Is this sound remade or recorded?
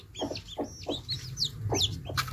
recorded